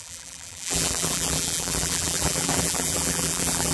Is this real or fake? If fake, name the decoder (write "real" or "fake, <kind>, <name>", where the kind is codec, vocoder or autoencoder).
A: fake, vocoder, BigVGAN v2